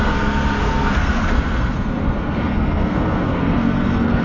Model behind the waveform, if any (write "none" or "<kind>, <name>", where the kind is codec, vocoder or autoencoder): codec, SNAC